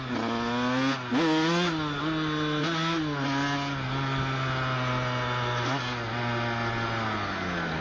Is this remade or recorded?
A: recorded